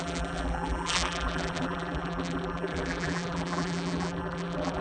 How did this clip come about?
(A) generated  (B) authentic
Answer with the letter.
A